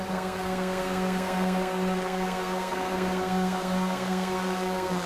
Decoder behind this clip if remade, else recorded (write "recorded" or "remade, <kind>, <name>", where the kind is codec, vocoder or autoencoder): remade, codec, SNAC